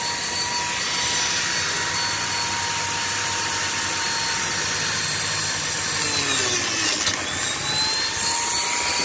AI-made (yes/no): no